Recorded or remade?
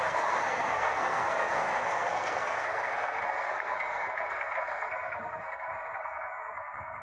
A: remade